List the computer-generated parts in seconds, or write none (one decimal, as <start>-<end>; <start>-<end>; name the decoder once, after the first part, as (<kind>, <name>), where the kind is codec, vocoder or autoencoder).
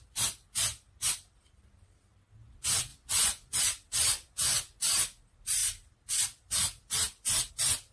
2.9-3.6 (vocoder, Vocos); 4.0-4.8